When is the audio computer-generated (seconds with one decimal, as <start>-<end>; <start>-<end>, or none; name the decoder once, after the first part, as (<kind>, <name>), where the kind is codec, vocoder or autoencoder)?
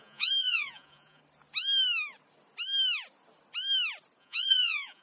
0.0-1.2 (vocoder, Vocos); 4.2-5.0